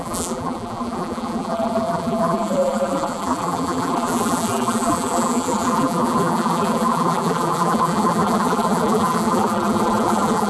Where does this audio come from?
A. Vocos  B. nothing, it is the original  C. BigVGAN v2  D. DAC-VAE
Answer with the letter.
C